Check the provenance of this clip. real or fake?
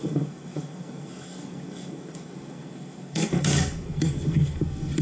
fake